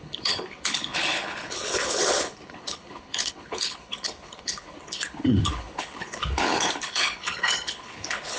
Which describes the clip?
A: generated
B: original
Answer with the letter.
A